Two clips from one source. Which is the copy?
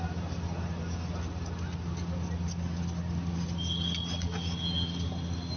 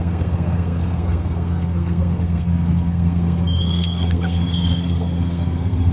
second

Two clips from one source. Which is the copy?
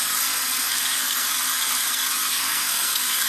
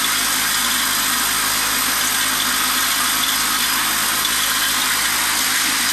first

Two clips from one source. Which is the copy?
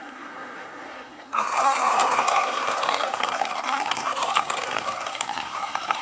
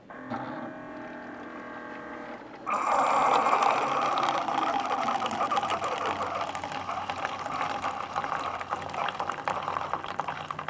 first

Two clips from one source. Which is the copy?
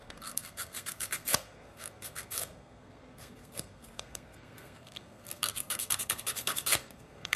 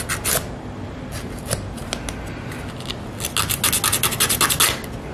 first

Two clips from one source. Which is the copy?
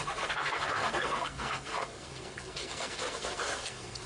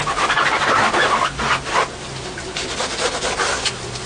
first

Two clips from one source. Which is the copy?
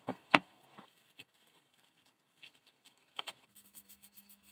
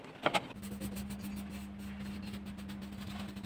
first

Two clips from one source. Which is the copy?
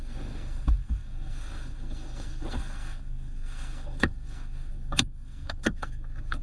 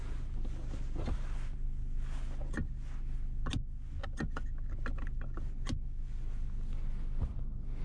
first